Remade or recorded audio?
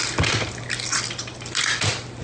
recorded